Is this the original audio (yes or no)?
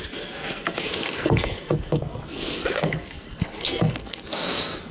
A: no